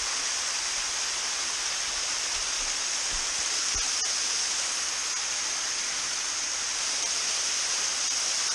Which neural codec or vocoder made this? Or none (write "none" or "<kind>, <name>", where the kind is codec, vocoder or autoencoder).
none